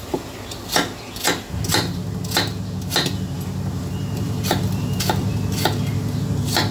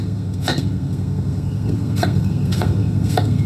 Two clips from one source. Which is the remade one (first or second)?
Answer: second